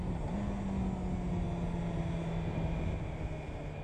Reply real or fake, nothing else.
real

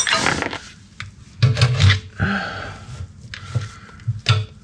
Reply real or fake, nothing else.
real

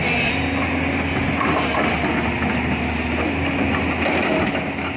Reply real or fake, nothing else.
real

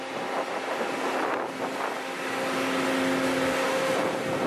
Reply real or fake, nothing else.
real